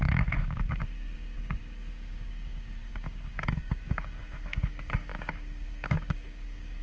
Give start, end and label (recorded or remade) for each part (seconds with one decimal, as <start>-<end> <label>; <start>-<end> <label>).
0.0-6.8 remade